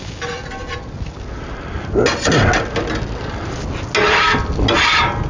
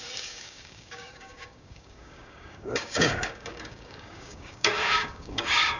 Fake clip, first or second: second